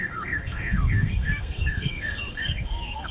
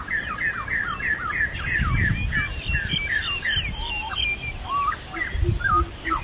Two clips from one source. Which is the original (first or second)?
second